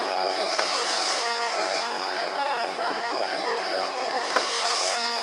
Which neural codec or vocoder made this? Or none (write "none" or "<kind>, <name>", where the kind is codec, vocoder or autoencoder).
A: codec, SNAC